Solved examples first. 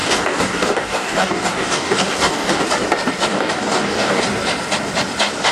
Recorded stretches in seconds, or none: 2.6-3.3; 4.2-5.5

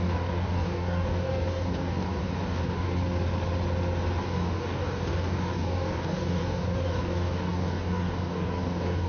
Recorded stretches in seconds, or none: 3.0-4.2